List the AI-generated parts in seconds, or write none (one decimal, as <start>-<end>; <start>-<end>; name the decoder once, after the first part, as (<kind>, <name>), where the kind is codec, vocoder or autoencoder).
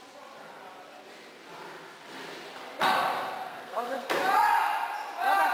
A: 3.5-4.2 (codec, SNAC)